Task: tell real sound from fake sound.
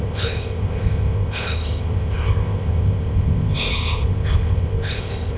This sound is fake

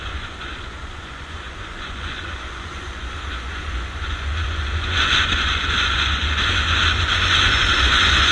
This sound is fake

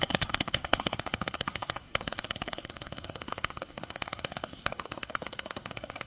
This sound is fake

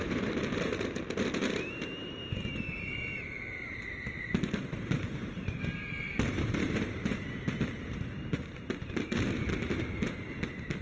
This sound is fake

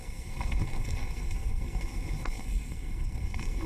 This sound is fake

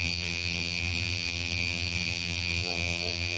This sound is fake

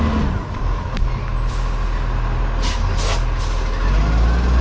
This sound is real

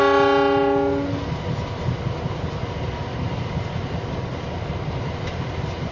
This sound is real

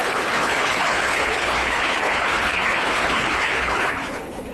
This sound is fake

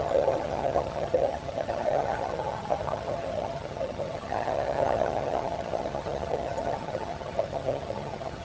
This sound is fake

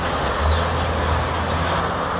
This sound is real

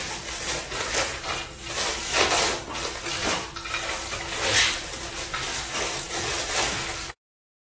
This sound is real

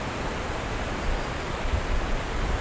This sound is fake